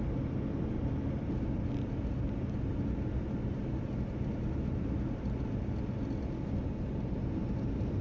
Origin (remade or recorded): recorded